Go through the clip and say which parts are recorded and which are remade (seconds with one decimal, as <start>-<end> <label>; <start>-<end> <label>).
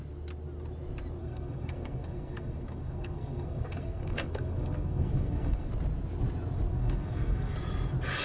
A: 0.0-1.2 recorded; 1.2-5.7 remade; 5.7-6.7 recorded; 6.7-7.5 remade; 7.5-8.2 recorded